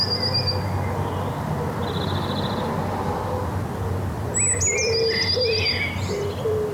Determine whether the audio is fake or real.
real